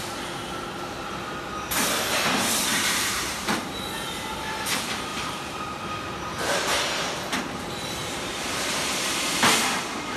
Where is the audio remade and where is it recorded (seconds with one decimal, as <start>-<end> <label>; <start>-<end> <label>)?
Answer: 0.0-2.7 recorded; 2.7-3.6 remade; 3.6-5.1 recorded; 5.1-5.6 remade; 5.6-10.2 recorded